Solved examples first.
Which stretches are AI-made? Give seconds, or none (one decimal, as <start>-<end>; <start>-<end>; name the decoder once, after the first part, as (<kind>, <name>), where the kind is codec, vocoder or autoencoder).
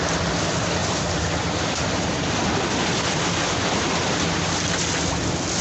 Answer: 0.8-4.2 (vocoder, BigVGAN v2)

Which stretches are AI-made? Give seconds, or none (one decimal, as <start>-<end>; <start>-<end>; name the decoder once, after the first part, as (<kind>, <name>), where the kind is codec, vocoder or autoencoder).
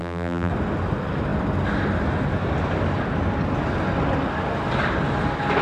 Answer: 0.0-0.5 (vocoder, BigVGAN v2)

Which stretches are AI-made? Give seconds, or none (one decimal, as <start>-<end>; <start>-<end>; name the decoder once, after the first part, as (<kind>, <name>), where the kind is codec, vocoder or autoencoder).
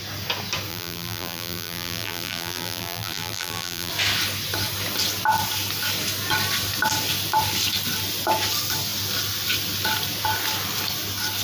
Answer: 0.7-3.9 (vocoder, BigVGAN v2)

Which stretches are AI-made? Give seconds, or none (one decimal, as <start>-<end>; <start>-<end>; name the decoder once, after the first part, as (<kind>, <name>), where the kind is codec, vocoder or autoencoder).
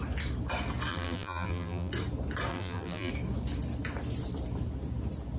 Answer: 0.9-1.9 (vocoder, BigVGAN v2); 2.5-3.1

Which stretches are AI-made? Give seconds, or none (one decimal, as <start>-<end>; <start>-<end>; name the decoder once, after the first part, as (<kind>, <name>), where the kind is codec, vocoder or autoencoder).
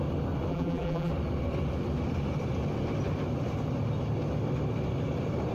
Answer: 0.5-1.1 (vocoder, BigVGAN v2)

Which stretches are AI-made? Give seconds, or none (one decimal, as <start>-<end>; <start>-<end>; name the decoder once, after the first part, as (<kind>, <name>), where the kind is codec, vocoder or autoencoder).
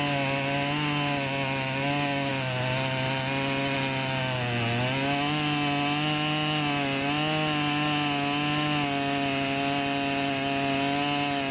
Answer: none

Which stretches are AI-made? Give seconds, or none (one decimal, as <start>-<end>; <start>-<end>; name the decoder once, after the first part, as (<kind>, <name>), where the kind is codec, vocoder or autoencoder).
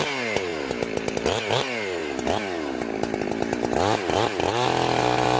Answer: none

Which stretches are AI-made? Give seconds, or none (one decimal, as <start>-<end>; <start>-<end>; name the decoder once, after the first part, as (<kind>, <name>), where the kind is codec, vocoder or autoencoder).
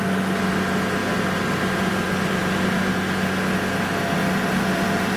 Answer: 1.0-2.9 (vocoder, BigVGAN v2); 4.2-5.2